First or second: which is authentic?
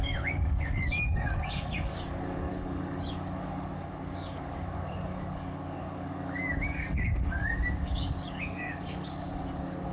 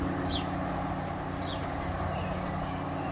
second